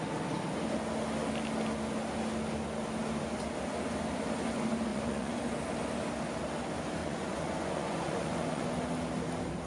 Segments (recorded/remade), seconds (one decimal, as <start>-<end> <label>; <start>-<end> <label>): 0.0-4.9 recorded; 4.9-5.4 remade; 5.4-7.0 recorded; 7.0-8.8 remade; 8.8-9.7 recorded